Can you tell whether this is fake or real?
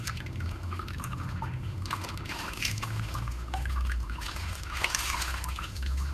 fake